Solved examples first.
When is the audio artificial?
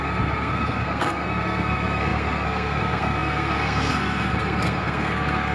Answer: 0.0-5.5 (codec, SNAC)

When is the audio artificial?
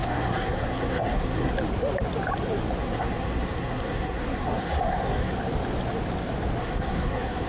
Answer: 0.0-1.5 (codec, SNAC); 2.8-5.3; 6.6-7.5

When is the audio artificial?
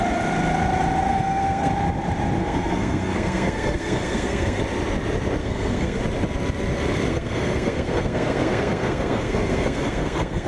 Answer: 1.1-1.7 (codec, SNAC); 2.4-4.6; 5.4-6.0; 7.1-10.5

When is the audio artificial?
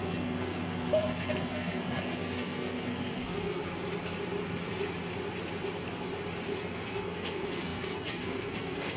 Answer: 0.0-3.6 (codec, SNAC); 6.6-9.0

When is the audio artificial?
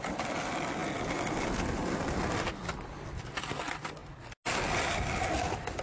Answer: none